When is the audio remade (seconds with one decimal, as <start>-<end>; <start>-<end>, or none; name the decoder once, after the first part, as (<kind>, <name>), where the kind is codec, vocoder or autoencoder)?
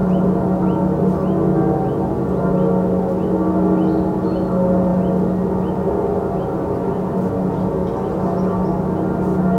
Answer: 0.0-2.4 (vocoder, BigVGAN v2)